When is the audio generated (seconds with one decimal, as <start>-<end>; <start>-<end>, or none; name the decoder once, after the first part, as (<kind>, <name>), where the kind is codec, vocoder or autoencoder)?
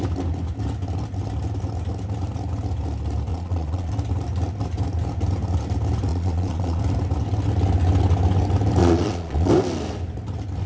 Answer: 3.3-3.9 (vocoder, Vocos); 6.1-6.8; 8.8-9.5